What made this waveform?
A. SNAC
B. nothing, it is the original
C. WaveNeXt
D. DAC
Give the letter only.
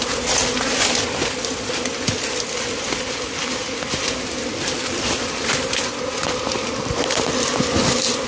B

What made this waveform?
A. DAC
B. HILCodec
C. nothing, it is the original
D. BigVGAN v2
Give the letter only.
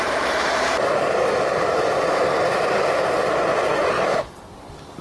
C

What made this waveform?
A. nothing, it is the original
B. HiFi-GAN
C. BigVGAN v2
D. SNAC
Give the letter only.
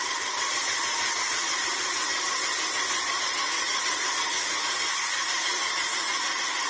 A